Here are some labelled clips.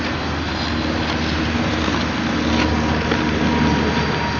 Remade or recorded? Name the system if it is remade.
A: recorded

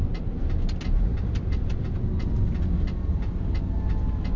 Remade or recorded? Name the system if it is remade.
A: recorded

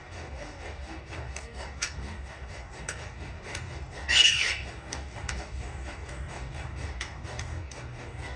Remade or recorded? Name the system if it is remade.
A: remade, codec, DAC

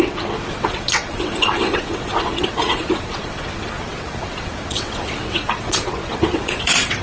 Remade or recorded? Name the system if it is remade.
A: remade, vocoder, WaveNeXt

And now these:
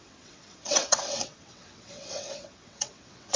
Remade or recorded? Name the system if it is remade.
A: remade, vocoder, WaveNeXt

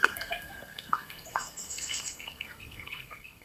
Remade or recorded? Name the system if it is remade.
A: remade, codec, SNAC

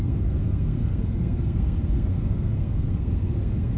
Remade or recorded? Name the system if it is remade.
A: remade, codec, SNAC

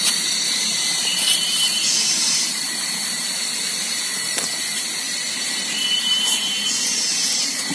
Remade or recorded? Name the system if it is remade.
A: remade, vocoder, BigVGAN v2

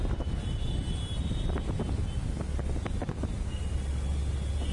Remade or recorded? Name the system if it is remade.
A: recorded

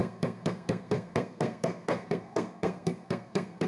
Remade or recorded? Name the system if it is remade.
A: remade, codec, SNAC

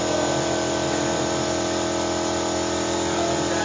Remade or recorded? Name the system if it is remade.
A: recorded